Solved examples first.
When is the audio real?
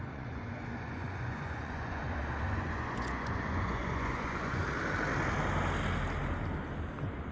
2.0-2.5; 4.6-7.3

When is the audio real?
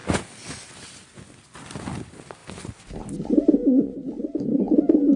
0.0-5.2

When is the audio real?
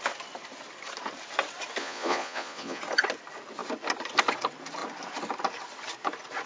0.0-1.8; 2.8-6.5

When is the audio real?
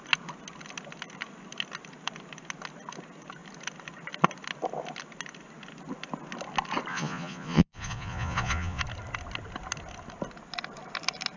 0.0-6.9; 8.8-11.4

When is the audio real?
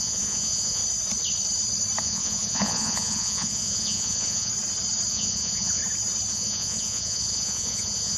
0.8-2.0; 4.5-5.1; 5.8-6.3